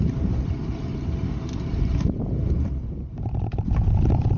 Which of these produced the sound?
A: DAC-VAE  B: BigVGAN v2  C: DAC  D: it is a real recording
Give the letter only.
B